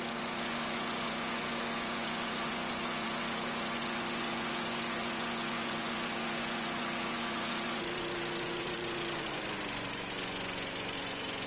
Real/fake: fake